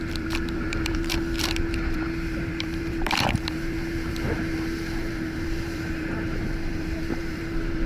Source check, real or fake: fake